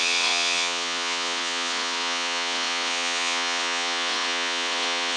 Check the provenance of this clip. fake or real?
fake